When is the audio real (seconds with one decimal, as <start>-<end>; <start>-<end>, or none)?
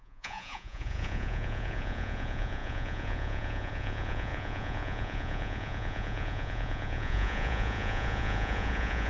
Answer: none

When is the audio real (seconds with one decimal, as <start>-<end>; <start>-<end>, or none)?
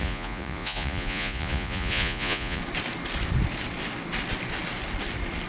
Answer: 2.6-5.5